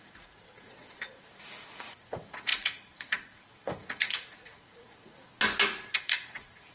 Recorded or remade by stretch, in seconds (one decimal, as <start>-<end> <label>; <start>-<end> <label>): 0.0-5.3 remade; 5.3-5.9 recorded; 5.9-6.7 remade

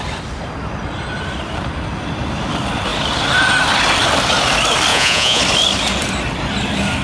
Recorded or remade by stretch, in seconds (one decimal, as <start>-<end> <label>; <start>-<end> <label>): 0.0-4.9 recorded; 4.9-5.4 remade; 5.4-7.0 recorded